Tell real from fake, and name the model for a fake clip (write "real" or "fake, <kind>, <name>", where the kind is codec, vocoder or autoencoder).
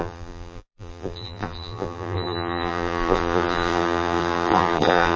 fake, vocoder, BigVGAN v2